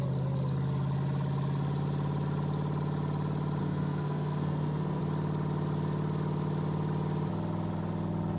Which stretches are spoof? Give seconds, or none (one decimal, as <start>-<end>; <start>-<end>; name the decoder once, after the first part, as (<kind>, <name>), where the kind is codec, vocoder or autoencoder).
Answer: 3.6-5.0 (codec, SNAC)